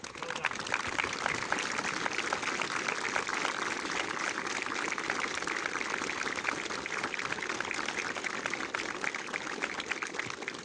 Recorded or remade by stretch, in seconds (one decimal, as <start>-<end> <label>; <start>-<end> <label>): 0.0-10.6 recorded